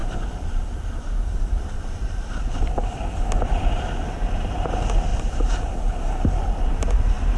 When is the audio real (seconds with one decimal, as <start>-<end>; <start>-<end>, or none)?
2.5-7.4